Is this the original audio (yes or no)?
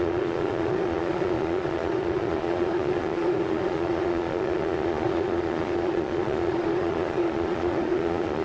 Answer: no